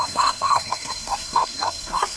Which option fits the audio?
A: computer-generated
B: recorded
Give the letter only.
A